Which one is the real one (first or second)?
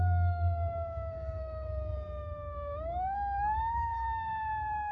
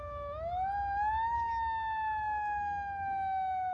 second